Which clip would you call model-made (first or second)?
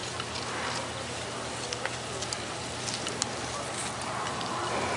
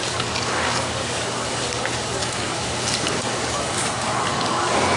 second